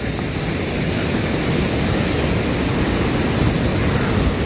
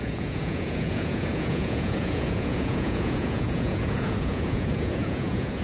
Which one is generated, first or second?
second